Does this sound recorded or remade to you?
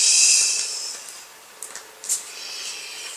recorded